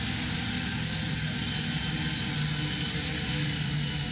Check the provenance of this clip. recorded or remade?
recorded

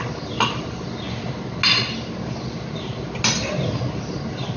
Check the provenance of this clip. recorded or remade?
recorded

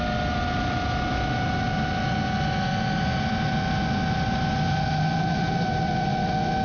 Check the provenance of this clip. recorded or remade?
recorded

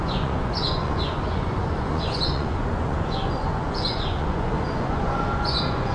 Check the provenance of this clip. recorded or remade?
remade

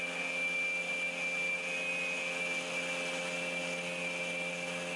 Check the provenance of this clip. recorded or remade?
recorded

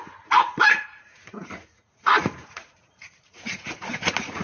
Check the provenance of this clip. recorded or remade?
remade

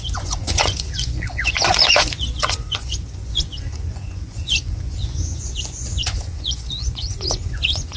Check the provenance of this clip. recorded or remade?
remade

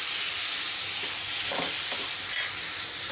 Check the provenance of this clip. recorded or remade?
recorded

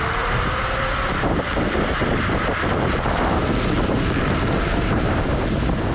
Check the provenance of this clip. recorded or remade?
recorded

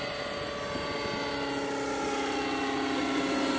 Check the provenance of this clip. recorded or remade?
recorded